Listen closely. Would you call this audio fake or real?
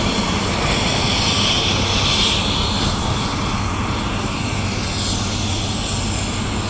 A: real